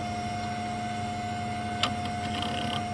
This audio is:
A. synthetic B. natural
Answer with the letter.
B